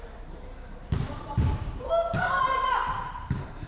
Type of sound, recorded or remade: remade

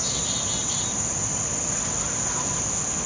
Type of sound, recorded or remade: recorded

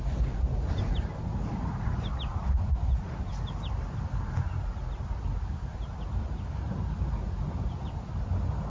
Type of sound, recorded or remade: recorded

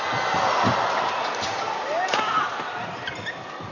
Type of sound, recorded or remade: recorded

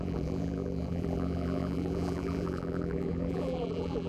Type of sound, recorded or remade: remade